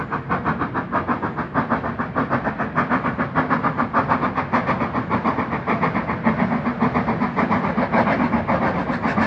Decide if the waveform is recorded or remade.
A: recorded